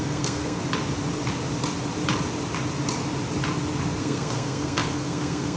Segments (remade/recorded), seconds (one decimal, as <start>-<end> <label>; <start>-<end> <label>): 0.0-0.6 remade; 0.6-4.0 recorded; 4.0-5.6 remade